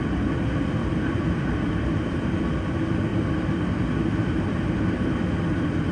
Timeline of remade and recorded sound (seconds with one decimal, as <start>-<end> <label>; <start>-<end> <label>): 0.0-0.8 recorded; 0.8-2.4 remade; 2.4-3.1 recorded; 3.1-5.2 remade; 5.2-5.9 recorded